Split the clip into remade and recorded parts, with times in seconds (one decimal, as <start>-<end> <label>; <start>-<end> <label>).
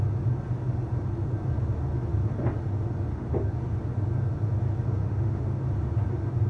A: 0.0-5.0 recorded; 5.0-5.6 remade; 5.6-6.5 recorded